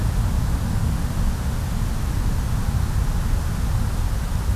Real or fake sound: real